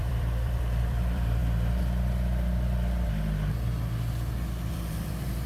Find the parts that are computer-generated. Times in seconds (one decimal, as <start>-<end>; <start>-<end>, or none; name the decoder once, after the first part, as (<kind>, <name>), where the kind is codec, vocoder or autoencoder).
0.0-1.4 (vocoder, BigVGAN v2); 4.7-5.5